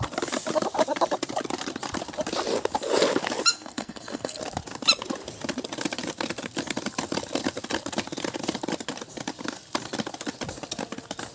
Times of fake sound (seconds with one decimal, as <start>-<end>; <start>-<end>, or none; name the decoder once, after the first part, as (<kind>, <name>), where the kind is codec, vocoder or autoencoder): 3.5-4.4 (codec, SNAC)